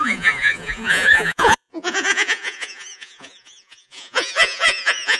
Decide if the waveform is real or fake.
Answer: fake